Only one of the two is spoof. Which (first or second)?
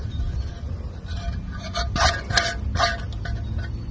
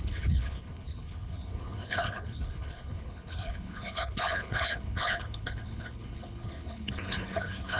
second